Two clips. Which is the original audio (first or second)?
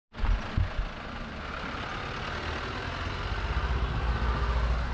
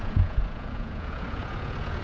first